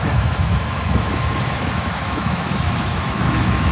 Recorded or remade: remade